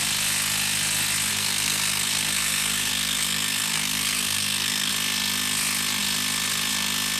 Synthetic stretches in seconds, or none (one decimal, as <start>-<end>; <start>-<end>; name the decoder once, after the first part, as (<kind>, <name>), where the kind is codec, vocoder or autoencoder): 1.3-4.9 (codec, SNAC)